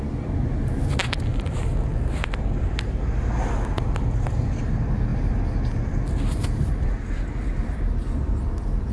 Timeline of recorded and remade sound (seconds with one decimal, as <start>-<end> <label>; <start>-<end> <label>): 0.0-8.9 recorded